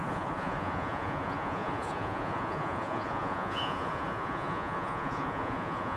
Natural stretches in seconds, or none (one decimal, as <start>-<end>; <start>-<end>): none